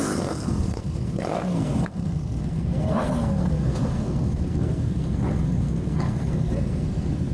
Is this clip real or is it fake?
fake